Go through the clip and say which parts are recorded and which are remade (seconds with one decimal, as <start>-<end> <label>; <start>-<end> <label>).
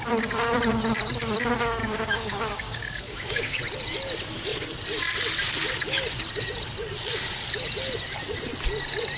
0.0-1.8 recorded; 1.8-3.6 remade; 3.6-9.2 recorded